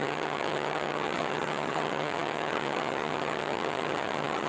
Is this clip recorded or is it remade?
remade